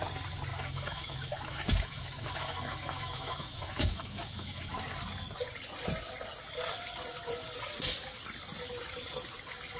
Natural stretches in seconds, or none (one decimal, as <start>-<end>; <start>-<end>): 0.0-0.5; 4.7-9.8